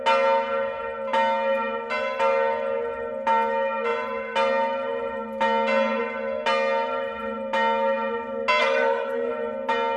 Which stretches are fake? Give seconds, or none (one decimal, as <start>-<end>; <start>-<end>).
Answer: 8.6-9.3